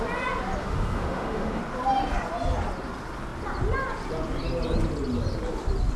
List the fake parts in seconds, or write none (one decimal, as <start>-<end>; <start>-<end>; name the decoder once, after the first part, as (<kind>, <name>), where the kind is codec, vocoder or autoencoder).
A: 0.6-1.6 (autoencoder, DAC-VAE)